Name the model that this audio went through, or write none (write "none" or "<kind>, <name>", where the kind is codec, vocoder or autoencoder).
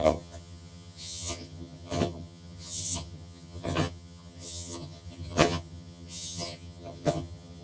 vocoder, HiFi-GAN